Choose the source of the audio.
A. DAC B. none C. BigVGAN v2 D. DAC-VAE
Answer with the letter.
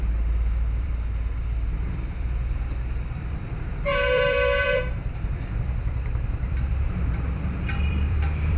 C